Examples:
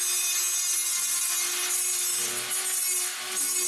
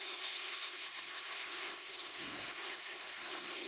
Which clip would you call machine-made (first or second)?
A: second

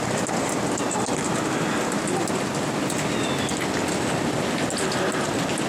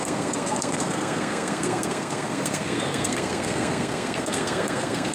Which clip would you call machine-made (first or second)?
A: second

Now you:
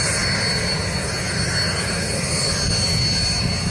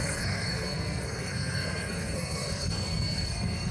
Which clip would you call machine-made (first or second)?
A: second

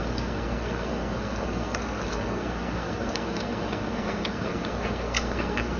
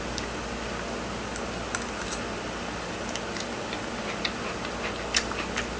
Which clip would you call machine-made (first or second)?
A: first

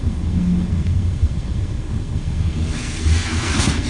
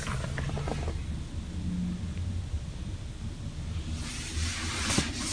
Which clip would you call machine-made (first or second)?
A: first